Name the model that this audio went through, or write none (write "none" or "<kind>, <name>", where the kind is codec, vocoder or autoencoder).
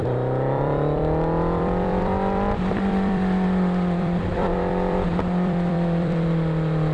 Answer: vocoder, BigVGAN v2